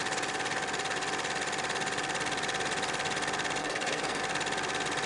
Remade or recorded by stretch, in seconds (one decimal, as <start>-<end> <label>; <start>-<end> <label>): 0.0-3.6 recorded; 3.6-4.2 remade; 4.2-5.1 recorded